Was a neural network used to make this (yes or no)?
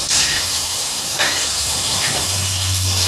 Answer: yes